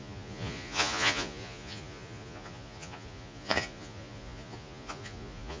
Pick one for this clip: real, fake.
fake